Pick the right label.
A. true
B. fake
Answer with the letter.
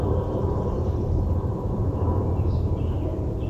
B